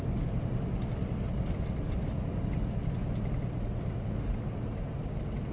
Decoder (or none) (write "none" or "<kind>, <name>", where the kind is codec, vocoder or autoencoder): none